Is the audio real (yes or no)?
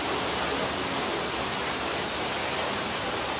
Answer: yes